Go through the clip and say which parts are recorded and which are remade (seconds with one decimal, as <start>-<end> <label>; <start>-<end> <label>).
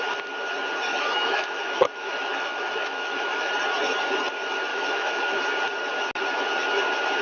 0.0-0.9 recorded; 0.9-3.5 remade; 3.5-4.7 recorded; 4.7-5.4 remade; 5.4-7.2 recorded